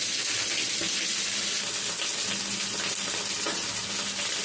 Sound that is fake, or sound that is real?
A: real